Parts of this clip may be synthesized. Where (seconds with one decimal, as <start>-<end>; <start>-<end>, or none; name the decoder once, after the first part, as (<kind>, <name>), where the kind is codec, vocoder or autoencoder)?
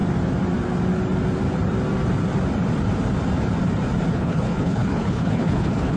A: 4.1-6.0 (codec, HILCodec)